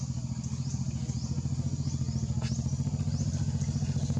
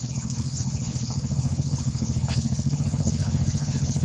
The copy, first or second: second